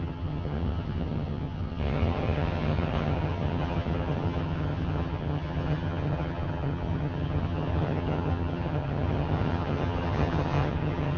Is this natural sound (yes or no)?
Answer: no